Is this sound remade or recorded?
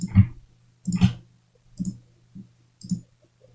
recorded